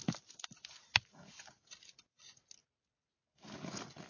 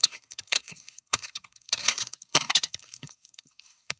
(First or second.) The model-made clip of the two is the second